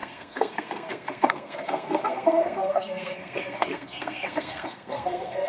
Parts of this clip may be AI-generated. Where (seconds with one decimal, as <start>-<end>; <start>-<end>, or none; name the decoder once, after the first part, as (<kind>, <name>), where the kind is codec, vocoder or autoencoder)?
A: 0.0-5.5 (codec, SNAC)